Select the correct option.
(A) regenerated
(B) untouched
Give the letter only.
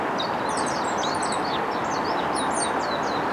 B